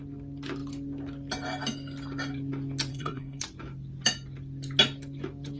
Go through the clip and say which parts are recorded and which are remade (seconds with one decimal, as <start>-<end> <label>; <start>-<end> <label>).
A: 0.0-2.9 recorded; 2.9-3.4 remade; 3.4-5.6 recorded